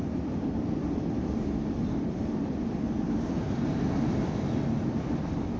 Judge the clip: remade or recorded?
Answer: recorded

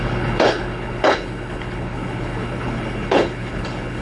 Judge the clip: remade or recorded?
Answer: remade